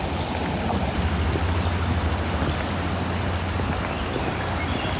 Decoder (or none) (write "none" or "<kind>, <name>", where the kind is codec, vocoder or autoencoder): none